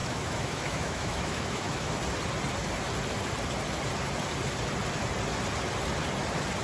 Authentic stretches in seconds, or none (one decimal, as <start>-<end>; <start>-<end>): 1.9-6.6